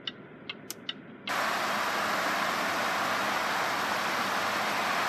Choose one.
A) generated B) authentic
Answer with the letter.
B